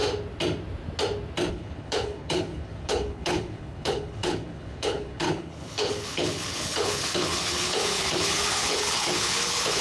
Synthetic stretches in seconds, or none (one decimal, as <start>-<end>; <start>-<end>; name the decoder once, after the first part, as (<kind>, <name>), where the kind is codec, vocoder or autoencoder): 1.5-9.8 (codec, HILCodec)